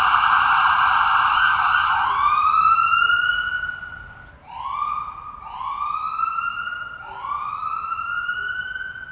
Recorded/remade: recorded